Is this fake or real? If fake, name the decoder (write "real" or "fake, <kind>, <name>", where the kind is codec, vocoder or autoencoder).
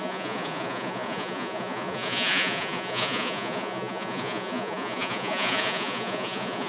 fake, vocoder, Vocos